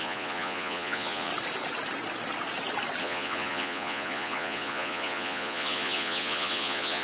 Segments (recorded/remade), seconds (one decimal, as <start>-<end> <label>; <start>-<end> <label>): 0.0-1.3 remade; 1.3-3.0 recorded; 3.0-7.0 remade

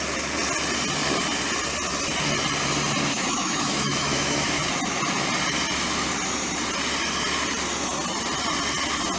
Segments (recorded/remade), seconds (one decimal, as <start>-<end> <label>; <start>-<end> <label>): 0.0-3.1 recorded; 3.1-4.6 remade; 4.6-9.2 recorded

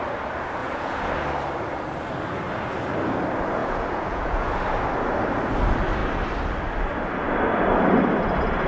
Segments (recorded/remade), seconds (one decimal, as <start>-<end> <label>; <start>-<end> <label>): 0.0-0.6 recorded; 0.6-1.1 remade; 1.1-3.6 recorded; 3.6-4.5 remade; 4.5-8.7 recorded